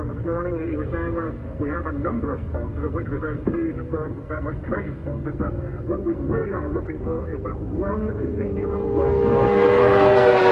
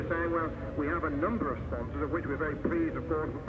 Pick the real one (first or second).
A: second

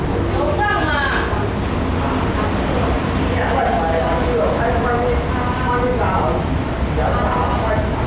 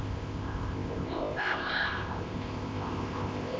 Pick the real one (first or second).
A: first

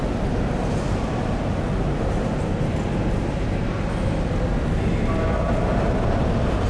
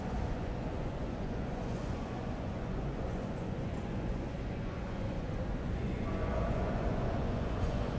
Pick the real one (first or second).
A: first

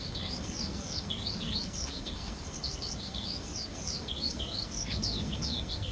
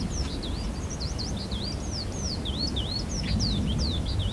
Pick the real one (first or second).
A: second